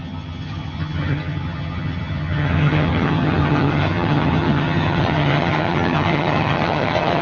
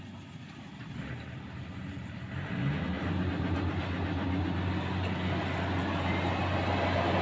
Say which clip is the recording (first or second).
second